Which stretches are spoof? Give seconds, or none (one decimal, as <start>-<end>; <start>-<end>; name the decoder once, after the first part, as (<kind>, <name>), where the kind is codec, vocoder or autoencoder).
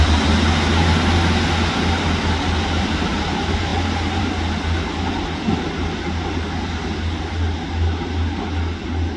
none